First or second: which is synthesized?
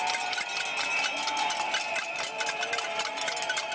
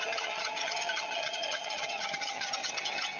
second